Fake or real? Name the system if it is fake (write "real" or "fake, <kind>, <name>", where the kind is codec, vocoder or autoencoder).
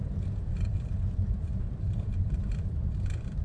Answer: fake, vocoder, BigVGAN v2